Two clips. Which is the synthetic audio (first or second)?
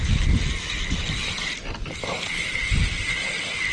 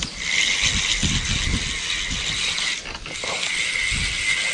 first